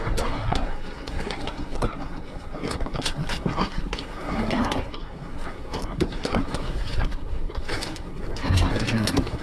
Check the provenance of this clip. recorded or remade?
remade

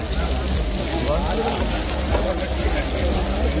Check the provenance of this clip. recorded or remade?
recorded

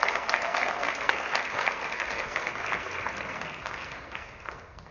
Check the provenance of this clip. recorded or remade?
remade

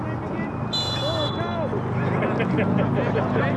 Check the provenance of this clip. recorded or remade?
recorded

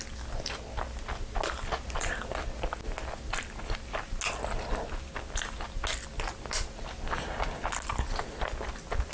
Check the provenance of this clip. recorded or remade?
recorded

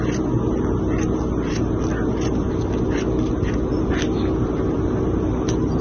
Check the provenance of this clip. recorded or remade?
recorded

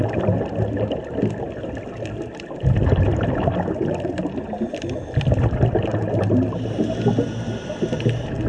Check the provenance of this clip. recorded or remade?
recorded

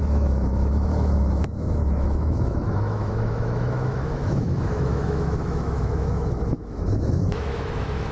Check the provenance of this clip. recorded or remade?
remade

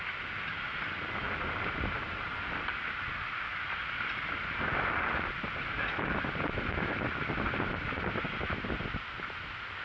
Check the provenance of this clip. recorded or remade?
recorded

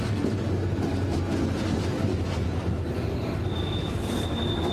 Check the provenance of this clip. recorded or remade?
recorded